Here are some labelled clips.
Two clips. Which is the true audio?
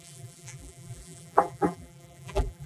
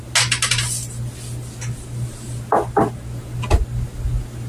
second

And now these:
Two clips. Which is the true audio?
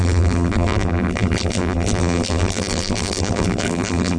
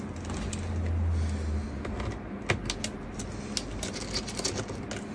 second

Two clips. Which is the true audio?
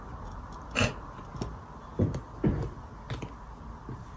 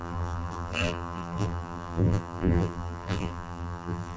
first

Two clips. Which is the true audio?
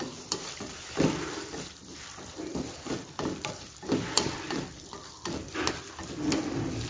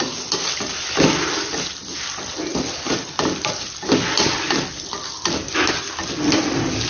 second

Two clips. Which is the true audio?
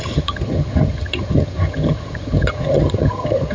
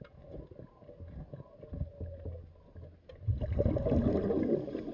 second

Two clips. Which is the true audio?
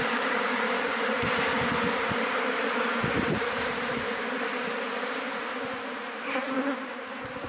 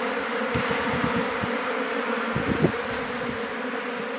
second